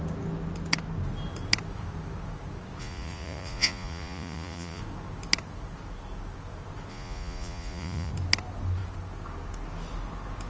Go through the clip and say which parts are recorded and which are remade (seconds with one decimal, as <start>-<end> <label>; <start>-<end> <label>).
0.0-2.8 recorded; 2.8-4.8 remade; 4.8-6.9 recorded; 6.9-8.1 remade; 8.1-10.5 recorded